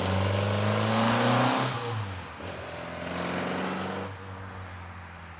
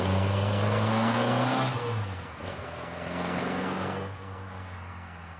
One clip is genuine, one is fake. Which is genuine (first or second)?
first